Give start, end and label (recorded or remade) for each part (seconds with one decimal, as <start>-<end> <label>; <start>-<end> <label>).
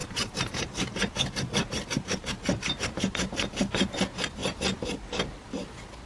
0.0-4.4 remade; 4.4-6.1 recorded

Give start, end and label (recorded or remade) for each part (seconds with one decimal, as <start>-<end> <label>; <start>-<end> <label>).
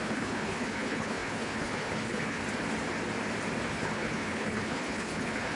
0.0-2.4 remade; 2.4-3.7 recorded; 3.7-5.6 remade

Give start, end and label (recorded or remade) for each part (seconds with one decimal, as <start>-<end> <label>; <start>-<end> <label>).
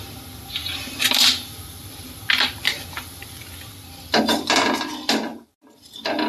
0.0-0.6 recorded; 0.6-4.2 remade; 4.2-6.3 recorded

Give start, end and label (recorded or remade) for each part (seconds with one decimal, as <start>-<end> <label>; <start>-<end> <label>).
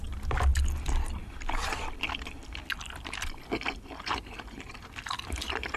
0.0-0.5 remade; 0.5-4.0 recorded; 4.0-5.8 remade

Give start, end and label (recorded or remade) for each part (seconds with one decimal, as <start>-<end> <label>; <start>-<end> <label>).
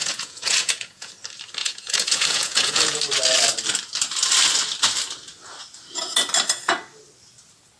0.0-1.1 remade; 1.1-1.6 recorded; 1.6-3.0 remade; 3.0-7.8 recorded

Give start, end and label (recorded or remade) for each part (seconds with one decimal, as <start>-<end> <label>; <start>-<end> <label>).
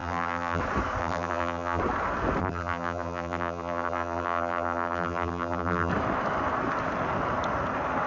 0.0-0.6 remade; 0.6-1.0 recorded; 1.0-1.8 remade; 1.8-2.4 recorded; 2.4-5.9 remade; 5.9-8.1 recorded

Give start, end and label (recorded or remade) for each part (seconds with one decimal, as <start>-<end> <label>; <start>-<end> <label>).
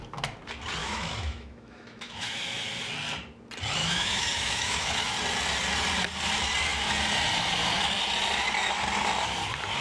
0.0-0.8 recorded; 0.8-2.7 remade; 2.7-3.8 recorded; 3.8-5.1 remade; 5.1-9.8 recorded